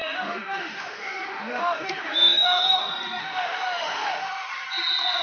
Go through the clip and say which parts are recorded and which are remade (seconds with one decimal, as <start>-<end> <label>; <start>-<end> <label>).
0.0-2.8 remade; 2.8-3.2 recorded; 3.2-4.5 remade; 4.5-5.2 recorded